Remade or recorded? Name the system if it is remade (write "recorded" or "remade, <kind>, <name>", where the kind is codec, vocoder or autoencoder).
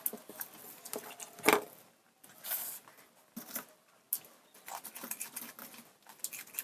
recorded